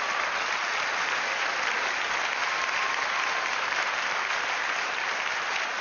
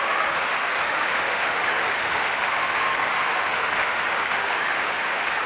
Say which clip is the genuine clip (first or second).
first